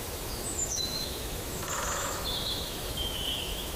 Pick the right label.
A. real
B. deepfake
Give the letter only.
B